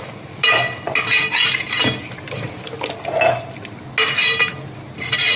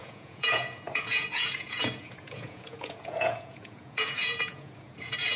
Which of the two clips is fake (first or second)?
second